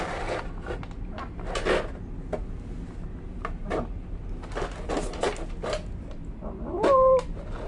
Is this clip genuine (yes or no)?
yes